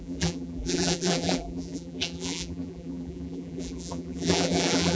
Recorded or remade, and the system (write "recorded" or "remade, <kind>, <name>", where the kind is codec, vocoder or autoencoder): remade, vocoder, BigVGAN v2